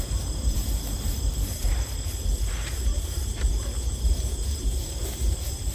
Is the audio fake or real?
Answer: fake